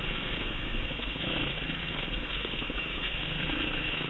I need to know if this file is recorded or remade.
remade